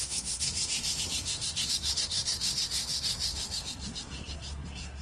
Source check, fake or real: fake